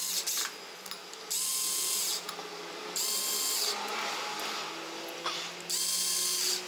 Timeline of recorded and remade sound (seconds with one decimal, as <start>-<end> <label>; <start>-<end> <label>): 0.0-1.5 recorded; 1.5-2.3 remade; 2.3-6.7 recorded